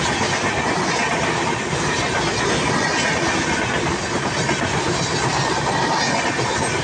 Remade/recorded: recorded